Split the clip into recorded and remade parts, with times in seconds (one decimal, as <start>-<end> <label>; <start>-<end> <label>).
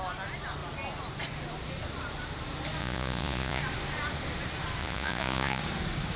0.0-2.8 recorded; 2.8-3.6 remade; 3.6-4.8 recorded; 4.8-5.6 remade; 5.6-6.2 recorded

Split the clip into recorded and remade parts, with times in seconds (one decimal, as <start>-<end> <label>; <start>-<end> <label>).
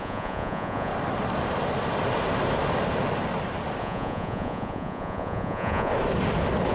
0.0-0.9 remade; 0.9-3.8 recorded; 3.8-5.9 remade; 5.9-6.7 recorded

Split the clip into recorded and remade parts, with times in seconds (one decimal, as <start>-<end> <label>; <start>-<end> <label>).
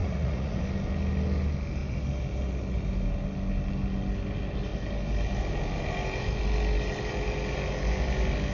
0.0-0.6 remade; 0.6-8.5 recorded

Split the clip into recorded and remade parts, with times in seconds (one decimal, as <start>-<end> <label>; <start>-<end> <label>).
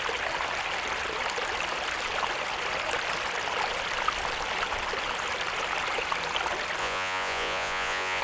0.0-6.8 recorded; 6.8-8.2 remade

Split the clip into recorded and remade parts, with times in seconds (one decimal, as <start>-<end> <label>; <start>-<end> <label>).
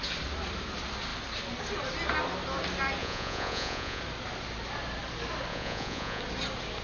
0.0-3.0 recorded; 3.0-4.0 remade; 4.0-5.5 recorded; 5.5-6.2 remade; 6.2-6.8 recorded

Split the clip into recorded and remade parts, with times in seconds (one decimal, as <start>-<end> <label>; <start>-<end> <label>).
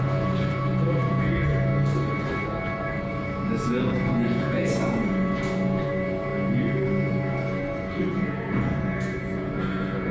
0.0-1.7 remade; 1.7-2.8 recorded; 2.8-6.3 remade; 6.3-7.1 recorded; 7.1-10.1 remade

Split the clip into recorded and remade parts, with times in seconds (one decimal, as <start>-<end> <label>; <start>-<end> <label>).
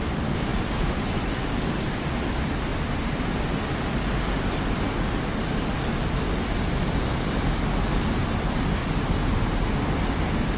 0.0-10.6 recorded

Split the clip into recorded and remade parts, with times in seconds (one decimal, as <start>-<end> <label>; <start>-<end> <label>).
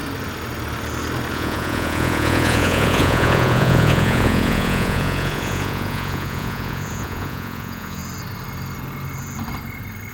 0.0-1.3 recorded; 1.3-8.0 remade; 8.0-10.1 recorded